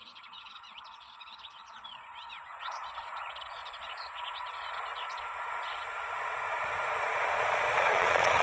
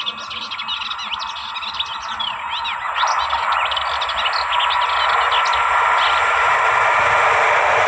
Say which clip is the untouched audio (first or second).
second